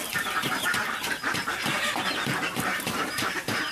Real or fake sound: fake